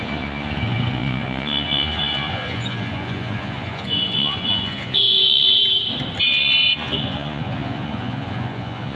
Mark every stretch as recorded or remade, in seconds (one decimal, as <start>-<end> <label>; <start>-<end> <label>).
0.0-5.6 remade; 5.6-6.2 recorded; 6.2-9.0 remade

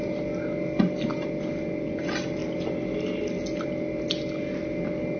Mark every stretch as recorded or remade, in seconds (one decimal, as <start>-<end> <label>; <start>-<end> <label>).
0.0-5.2 recorded

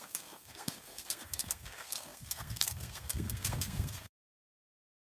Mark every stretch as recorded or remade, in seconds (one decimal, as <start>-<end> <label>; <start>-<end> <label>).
0.0-5.0 remade

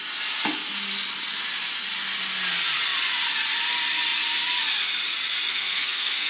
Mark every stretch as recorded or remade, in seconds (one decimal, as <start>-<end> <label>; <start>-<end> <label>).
0.0-5.5 recorded; 5.5-6.3 remade

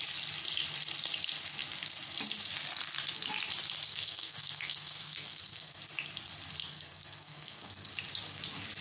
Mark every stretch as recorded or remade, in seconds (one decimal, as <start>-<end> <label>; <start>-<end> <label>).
0.0-3.9 recorded; 3.9-5.8 remade; 5.8-6.6 recorded; 6.6-7.9 remade; 7.9-8.8 recorded